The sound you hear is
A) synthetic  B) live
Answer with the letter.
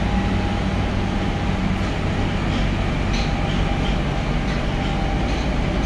B